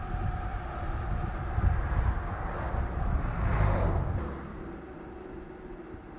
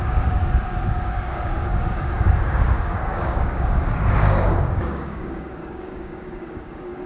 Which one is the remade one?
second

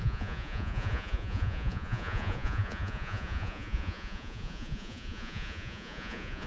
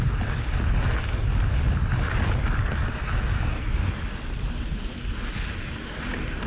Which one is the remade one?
first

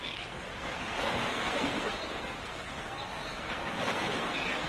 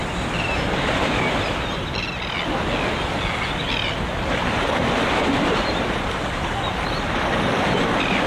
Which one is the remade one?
first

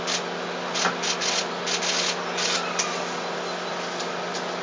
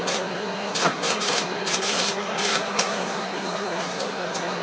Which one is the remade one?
second